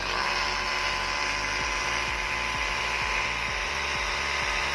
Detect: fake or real real